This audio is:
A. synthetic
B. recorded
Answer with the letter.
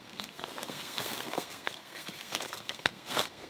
A